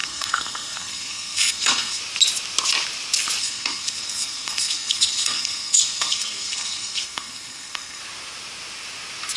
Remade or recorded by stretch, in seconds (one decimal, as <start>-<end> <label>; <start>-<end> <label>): 0.0-2.0 remade; 2.0-3.4 recorded; 3.4-8.0 remade; 8.0-9.4 recorded